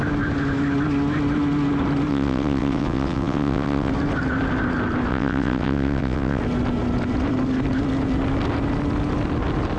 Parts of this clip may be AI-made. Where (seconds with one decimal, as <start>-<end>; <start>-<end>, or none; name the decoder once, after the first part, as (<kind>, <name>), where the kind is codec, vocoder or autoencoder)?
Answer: 2.1-3.9 (vocoder, WaveNeXt); 5.1-6.4